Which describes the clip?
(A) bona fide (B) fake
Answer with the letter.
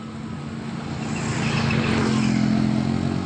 A